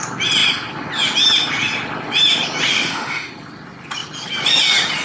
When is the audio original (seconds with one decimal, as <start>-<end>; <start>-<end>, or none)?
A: 0.0-2.7; 3.3-5.0